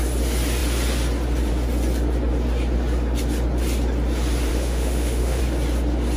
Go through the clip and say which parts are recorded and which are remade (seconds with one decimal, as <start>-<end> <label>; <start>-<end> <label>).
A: 0.0-4.5 recorded; 4.5-5.4 remade; 5.4-6.2 recorded